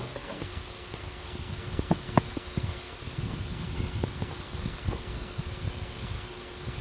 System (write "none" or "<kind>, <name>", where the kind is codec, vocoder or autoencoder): codec, SNAC